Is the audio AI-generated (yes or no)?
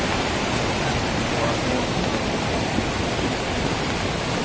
no